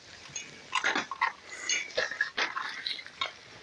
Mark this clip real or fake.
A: real